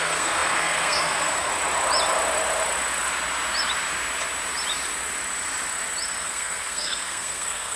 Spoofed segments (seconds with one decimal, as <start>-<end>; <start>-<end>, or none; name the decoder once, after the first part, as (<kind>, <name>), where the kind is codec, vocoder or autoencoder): 0.0-1.5 (codec, SNAC); 6.2-7.8